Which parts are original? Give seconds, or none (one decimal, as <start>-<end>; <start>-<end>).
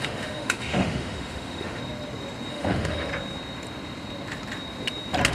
1.8-2.5; 3.1-5.3